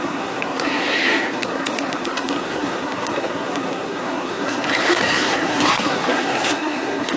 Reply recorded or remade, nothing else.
remade